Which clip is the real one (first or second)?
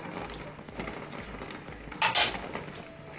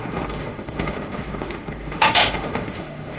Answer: first